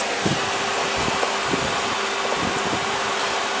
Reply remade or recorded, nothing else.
recorded